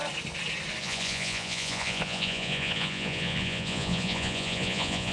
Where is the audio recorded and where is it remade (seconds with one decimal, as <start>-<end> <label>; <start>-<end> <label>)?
0.0-0.8 recorded; 0.8-5.1 remade